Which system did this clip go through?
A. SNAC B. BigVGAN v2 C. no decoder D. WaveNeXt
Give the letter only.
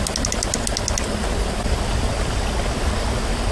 C